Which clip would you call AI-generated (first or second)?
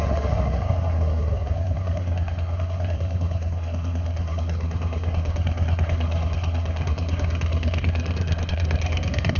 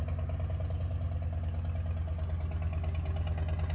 first